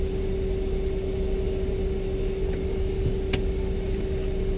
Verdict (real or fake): real